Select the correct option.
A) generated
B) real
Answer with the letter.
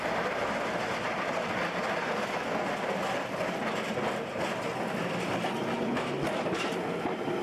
B